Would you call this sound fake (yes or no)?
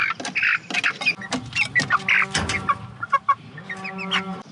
no